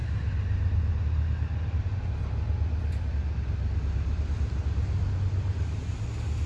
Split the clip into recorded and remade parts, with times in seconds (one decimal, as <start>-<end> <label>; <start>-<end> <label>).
0.0-6.5 recorded